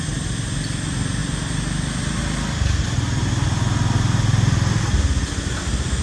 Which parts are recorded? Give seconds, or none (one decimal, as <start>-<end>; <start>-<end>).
0.0-6.0